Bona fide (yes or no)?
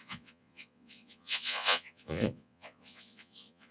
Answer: no